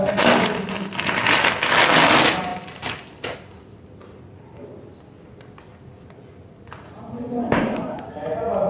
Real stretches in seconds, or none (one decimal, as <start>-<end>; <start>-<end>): 0.0-7.4; 8.0-8.7